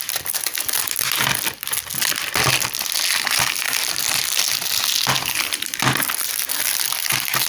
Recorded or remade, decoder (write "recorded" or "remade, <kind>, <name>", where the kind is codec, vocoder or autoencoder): recorded